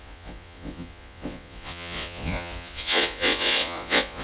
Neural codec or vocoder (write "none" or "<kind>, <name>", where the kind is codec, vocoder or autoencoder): vocoder, Vocos